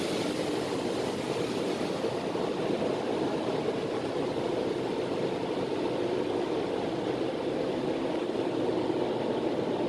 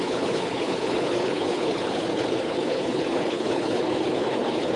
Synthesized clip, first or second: second